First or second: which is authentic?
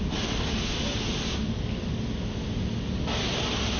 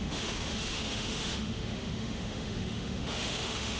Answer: first